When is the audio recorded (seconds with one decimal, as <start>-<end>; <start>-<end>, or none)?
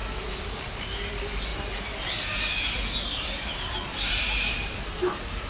0.0-3.9